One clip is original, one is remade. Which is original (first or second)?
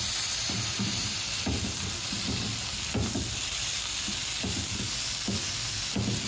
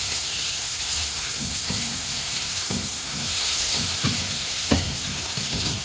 first